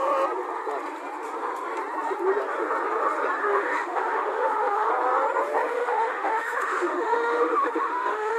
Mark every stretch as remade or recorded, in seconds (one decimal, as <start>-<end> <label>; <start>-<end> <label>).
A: 0.0-3.4 recorded; 3.4-4.9 remade; 4.9-5.6 recorded; 5.6-8.4 remade